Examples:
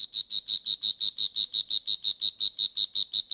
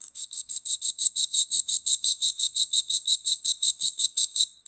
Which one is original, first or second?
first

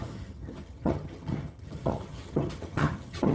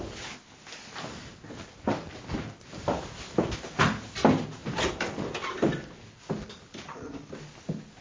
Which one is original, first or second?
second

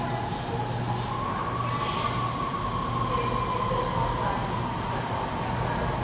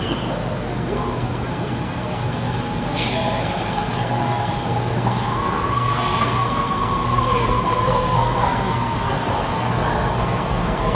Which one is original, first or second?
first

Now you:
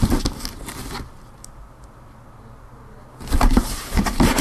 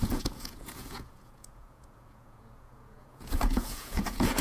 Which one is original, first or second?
first